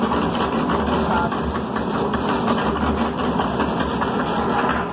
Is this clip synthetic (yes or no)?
no